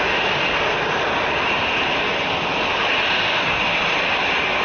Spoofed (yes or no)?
no